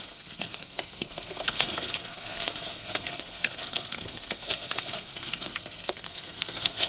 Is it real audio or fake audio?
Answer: fake